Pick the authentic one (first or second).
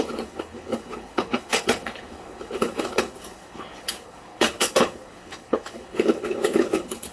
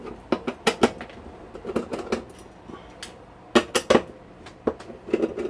second